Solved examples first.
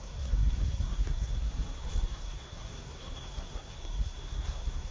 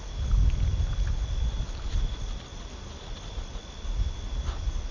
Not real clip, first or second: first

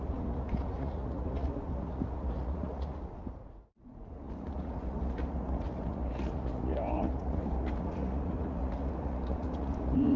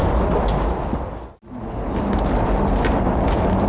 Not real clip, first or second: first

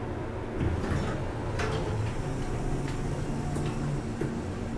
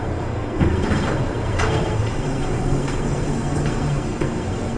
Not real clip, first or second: second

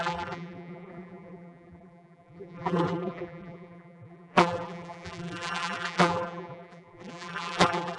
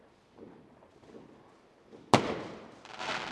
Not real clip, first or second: first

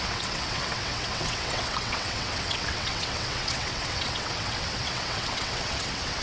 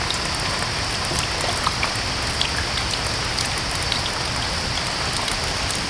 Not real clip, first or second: first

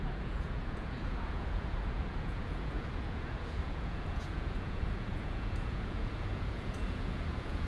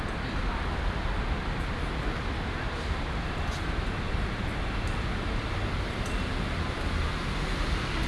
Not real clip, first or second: first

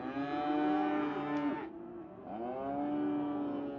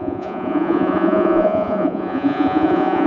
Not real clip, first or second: second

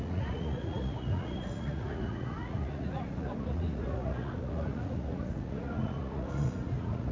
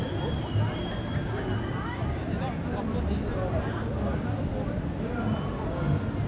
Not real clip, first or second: first